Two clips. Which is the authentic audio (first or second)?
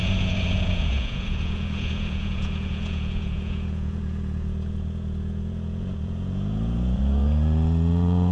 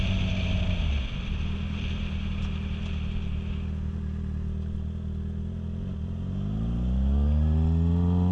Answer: second